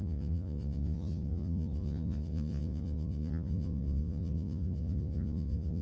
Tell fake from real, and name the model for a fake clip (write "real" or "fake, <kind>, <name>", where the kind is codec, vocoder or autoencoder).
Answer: fake, vocoder, Vocos